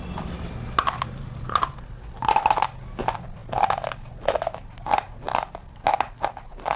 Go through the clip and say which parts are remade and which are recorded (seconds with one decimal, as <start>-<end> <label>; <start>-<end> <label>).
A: 0.0-6.8 recorded